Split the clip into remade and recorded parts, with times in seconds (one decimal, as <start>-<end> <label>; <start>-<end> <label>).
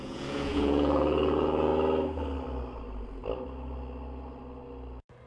0.0-1.7 remade; 1.7-5.3 recorded